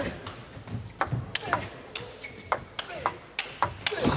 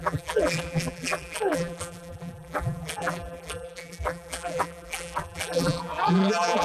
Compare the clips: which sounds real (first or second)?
first